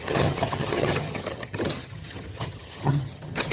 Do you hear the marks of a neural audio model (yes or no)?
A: yes